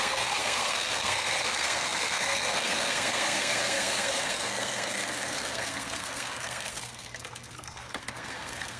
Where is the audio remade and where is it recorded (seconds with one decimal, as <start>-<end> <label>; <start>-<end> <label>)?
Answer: 0.0-8.8 remade